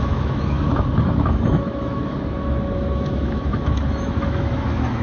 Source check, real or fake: fake